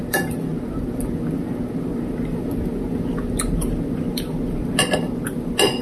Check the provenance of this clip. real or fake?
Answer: real